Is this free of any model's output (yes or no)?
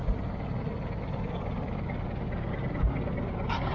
yes